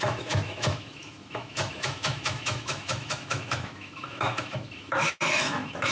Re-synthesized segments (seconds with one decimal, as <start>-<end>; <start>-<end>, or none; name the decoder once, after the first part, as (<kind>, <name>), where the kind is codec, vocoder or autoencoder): 0.0-5.9 (autoencoder, DAC-VAE)